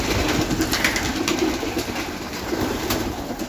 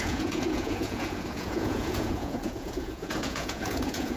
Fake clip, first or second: second